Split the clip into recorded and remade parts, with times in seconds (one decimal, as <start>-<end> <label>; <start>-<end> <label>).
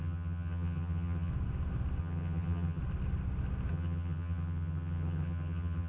0.0-1.3 remade; 1.3-2.0 recorded; 2.0-2.8 remade; 2.8-3.7 recorded; 3.7-5.9 remade